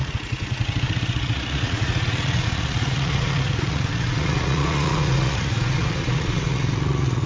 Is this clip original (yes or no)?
no